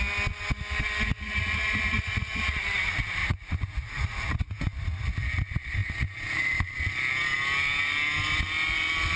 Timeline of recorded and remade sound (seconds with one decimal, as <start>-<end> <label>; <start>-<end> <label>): 0.0-1.1 recorded; 1.1-2.5 remade; 2.5-3.2 recorded; 3.2-4.6 remade; 4.6-9.2 recorded